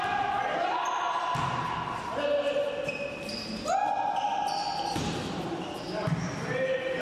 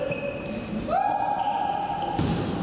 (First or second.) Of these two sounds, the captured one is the first